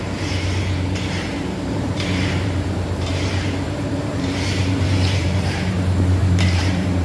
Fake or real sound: fake